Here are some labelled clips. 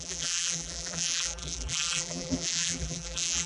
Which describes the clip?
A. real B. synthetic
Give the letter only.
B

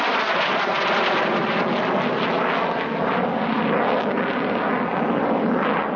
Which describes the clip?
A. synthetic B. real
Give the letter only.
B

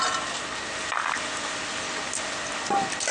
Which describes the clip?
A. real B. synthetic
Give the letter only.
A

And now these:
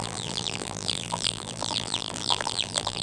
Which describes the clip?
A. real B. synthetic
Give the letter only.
B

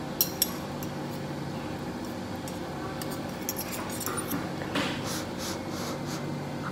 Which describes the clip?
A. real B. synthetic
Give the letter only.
A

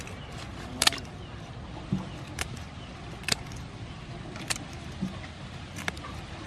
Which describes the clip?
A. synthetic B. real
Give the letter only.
A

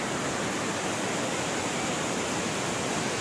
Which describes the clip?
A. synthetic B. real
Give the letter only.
B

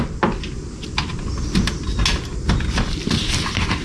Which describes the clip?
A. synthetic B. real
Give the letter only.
B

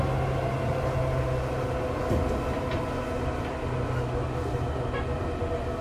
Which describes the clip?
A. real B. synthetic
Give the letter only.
A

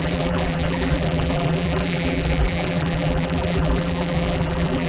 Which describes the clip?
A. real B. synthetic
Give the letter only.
B